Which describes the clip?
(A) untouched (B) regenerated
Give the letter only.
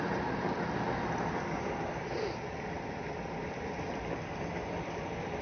A